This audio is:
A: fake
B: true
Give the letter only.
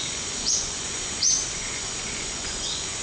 A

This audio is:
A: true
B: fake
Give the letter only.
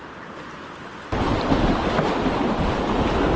A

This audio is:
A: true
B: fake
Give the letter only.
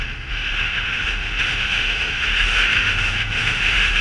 B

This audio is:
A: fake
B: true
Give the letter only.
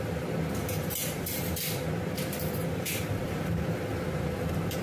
A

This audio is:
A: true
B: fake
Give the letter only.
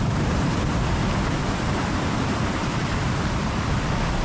B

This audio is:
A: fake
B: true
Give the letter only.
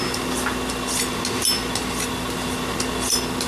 B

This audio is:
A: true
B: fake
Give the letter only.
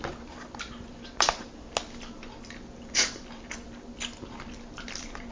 A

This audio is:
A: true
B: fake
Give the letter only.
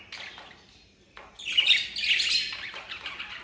A